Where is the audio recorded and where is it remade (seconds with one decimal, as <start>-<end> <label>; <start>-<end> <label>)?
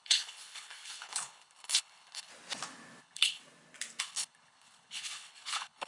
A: 0.0-2.3 remade; 2.3-3.0 recorded; 3.0-3.4 remade; 3.4-4.0 recorded; 4.0-5.9 remade